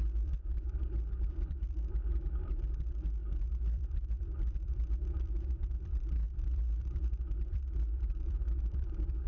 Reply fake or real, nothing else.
fake